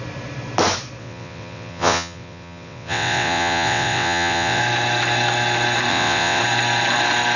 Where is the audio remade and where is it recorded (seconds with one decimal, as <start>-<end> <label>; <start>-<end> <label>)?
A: 0.0-1.0 recorded; 1.0-4.6 remade; 4.6-5.9 recorded; 5.9-6.4 remade; 6.4-7.4 recorded